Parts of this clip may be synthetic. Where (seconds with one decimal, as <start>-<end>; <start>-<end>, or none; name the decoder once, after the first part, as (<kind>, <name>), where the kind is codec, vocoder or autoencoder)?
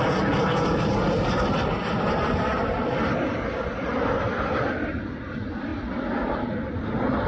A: 5.7-6.8 (vocoder, BigVGAN v2)